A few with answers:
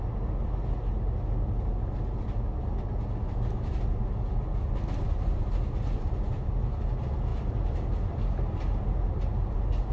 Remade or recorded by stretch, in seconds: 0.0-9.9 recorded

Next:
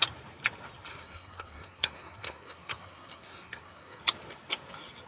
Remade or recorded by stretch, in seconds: 0.0-0.9 recorded; 0.9-4.0 remade; 4.0-5.1 recorded

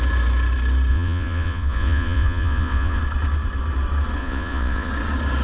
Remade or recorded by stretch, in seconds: 0.0-0.9 recorded; 0.9-3.0 remade; 3.0-4.2 recorded; 4.2-4.9 remade; 4.9-5.4 recorded

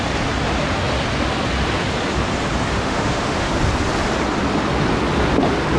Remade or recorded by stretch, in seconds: 0.0-2.7 recorded; 2.7-3.5 remade; 3.5-5.8 recorded

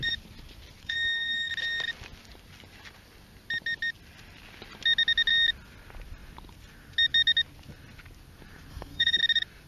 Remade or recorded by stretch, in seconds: 0.0-0.8 recorded; 0.8-1.5 remade; 1.5-8.7 recorded; 8.7-9.2 remade; 9.2-9.7 recorded

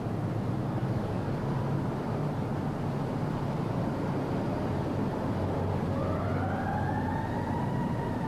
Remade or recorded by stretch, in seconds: 0.0-0.6 recorded; 0.6-1.6 remade; 1.6-8.3 recorded